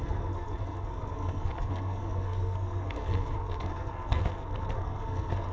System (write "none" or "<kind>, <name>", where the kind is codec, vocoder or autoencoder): codec, SNAC